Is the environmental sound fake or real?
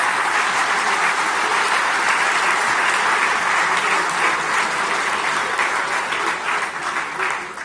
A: real